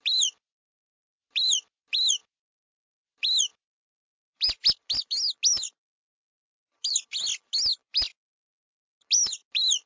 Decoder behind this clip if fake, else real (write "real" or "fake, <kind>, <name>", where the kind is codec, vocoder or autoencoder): real